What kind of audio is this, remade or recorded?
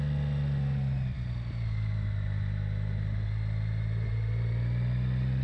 recorded